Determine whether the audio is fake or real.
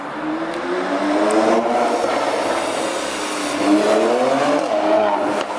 real